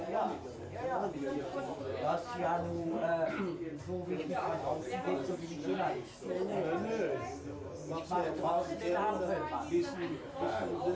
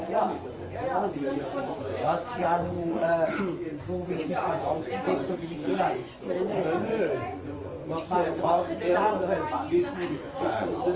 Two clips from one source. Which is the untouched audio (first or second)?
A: first